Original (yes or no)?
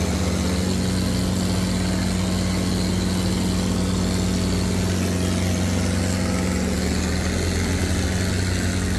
yes